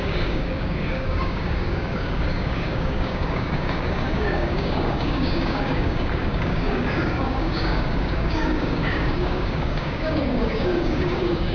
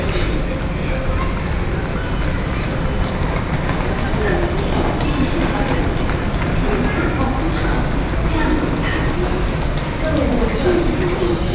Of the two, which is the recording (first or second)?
second